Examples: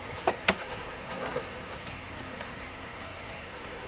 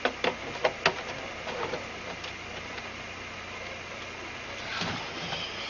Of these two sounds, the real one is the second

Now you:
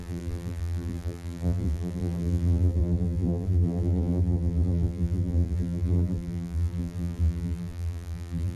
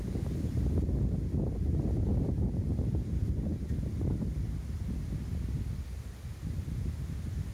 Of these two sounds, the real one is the second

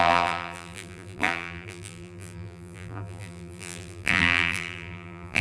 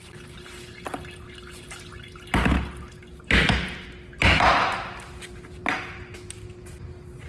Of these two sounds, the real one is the second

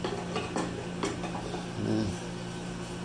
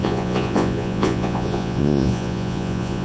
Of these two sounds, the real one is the first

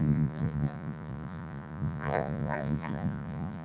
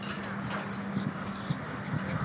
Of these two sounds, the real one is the second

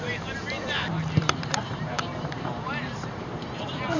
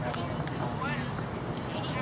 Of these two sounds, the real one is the second